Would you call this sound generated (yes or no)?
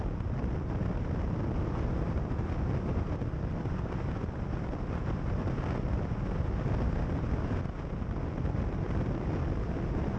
no